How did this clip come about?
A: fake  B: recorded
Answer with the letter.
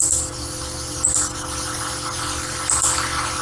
B